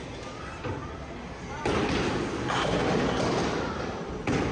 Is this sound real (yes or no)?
yes